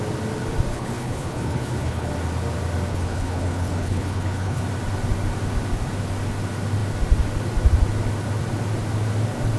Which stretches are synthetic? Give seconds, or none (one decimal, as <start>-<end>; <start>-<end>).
0.7-2.1; 2.9-4.6